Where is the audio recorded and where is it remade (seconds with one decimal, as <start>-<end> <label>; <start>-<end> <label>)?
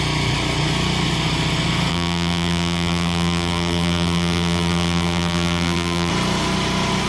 0.0-1.9 recorded; 1.9-6.1 remade; 6.1-7.1 recorded